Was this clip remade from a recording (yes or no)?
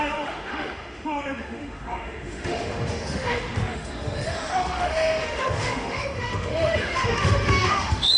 yes